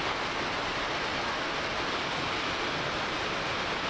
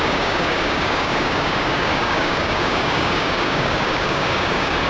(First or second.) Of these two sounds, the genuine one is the first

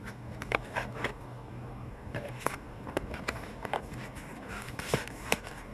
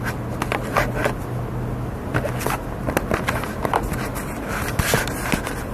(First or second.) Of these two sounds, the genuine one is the second